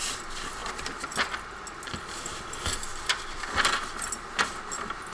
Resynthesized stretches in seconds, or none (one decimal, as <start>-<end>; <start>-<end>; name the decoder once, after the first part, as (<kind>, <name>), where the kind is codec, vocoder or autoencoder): none